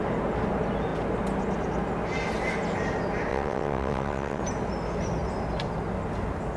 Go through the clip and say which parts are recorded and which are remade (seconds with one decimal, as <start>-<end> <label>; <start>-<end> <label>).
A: 0.0-3.3 recorded; 3.3-4.4 remade; 4.4-6.6 recorded